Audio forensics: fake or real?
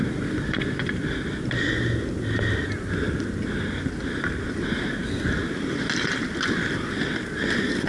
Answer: real